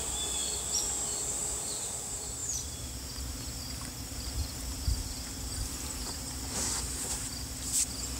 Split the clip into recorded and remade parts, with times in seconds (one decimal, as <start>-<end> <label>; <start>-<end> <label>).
0.0-0.4 remade; 0.4-1.5 recorded; 1.5-8.2 remade